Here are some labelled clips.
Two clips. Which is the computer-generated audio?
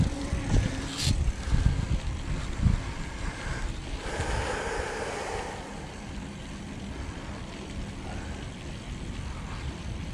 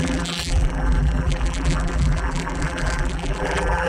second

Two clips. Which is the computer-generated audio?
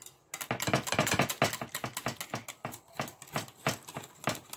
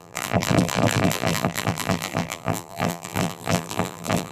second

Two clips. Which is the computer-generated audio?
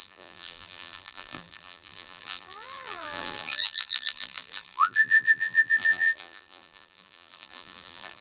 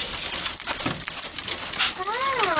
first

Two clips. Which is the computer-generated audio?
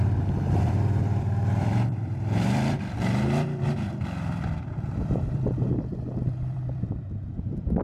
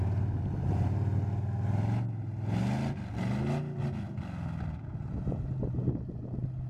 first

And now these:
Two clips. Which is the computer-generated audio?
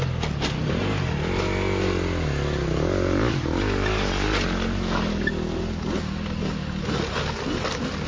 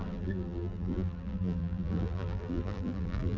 second